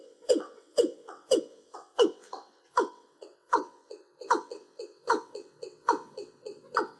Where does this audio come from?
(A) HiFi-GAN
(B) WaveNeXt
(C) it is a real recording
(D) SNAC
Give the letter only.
B